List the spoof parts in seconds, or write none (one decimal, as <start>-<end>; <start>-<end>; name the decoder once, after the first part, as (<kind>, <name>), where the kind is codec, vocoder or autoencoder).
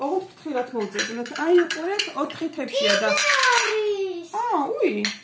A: 1.1-2.7 (vocoder, Vocos)